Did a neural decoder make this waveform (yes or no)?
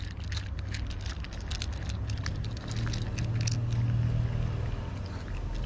no